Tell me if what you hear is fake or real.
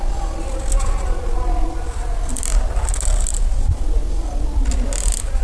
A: real